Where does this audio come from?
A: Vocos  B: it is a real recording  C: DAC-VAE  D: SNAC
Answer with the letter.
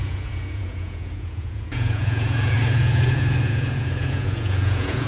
A